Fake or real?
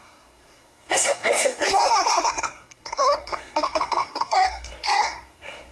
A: fake